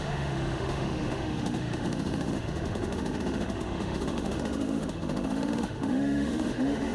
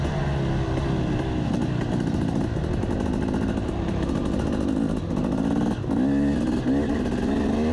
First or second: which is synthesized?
first